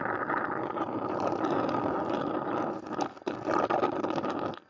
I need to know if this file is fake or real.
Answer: real